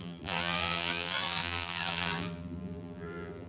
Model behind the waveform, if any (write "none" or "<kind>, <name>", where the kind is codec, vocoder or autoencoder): vocoder, BigVGAN v2